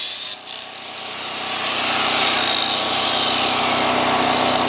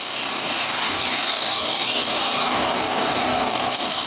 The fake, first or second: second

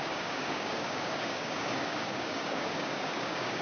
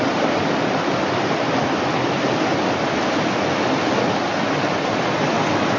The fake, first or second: first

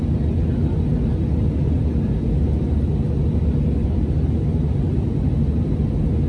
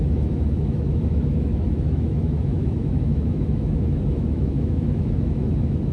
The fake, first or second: second